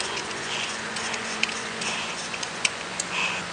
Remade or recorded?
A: remade